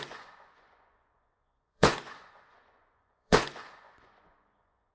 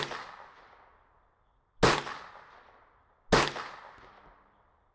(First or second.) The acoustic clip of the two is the second